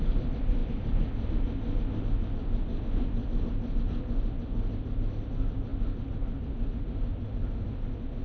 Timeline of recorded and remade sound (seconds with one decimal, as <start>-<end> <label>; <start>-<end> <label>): 0.0-8.2 recorded